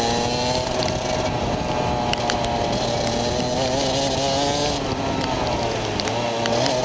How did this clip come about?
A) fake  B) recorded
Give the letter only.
B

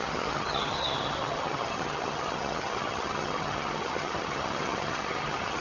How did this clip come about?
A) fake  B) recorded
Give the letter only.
A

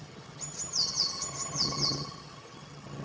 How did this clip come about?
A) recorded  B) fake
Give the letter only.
B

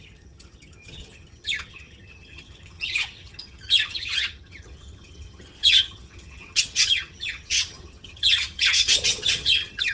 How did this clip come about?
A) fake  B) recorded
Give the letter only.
A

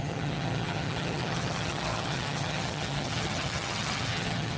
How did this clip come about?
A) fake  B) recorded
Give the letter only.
A